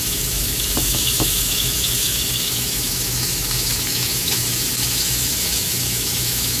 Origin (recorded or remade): remade